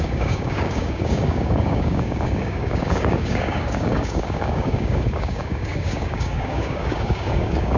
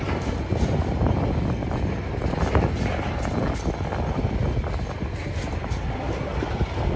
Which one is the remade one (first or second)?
first